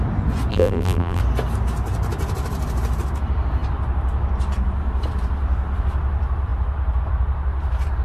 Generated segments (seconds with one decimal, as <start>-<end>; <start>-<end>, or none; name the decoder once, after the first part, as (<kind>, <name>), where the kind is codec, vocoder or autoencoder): 0.5-1.2 (vocoder, BigVGAN v2)

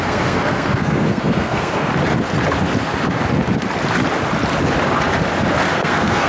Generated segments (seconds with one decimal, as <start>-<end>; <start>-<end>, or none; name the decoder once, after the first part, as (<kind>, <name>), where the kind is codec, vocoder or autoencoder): 0.0-1.9 (codec, SNAC); 5.7-6.3

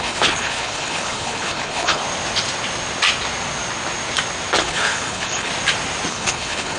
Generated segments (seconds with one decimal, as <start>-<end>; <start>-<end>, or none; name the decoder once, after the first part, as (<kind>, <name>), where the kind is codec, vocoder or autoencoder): 0.0-2.0 (codec, HILCodec); 4.6-5.5; 6.1-6.8

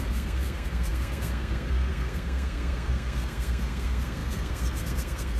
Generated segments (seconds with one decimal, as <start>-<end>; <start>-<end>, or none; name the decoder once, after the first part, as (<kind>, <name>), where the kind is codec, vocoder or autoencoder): 0.0-5.4 (codec, SNAC)